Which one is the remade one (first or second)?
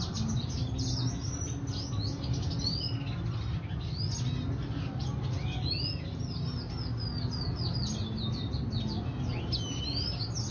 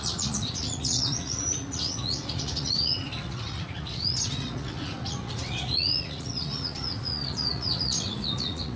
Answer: second